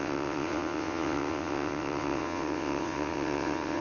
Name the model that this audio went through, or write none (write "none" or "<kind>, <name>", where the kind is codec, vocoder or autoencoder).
vocoder, WaveNeXt